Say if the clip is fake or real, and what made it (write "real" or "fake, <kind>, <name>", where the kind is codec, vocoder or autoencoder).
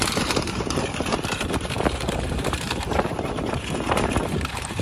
fake, vocoder, BigVGAN v2